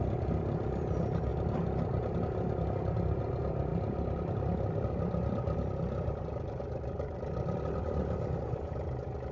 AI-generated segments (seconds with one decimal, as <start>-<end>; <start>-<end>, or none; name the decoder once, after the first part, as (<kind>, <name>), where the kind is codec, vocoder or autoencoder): none